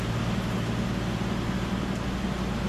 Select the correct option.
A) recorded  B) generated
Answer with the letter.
A